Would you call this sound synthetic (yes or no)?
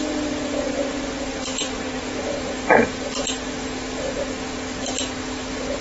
no